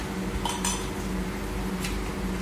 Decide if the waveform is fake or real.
real